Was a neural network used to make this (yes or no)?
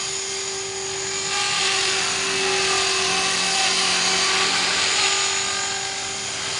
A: no